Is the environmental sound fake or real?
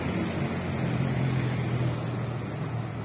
real